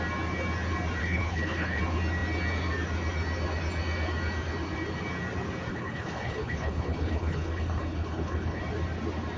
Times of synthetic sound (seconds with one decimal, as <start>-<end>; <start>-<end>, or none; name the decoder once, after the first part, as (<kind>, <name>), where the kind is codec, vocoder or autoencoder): 1.0-1.8 (codec, HILCodec); 5.7-8.6